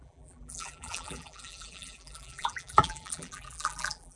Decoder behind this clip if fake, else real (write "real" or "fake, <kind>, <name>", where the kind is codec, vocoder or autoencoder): fake, vocoder, BigVGAN v2